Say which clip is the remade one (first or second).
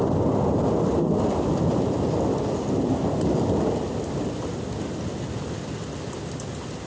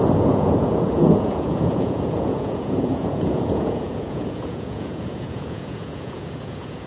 second